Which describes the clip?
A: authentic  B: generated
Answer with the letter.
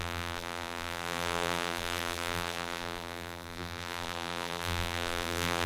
B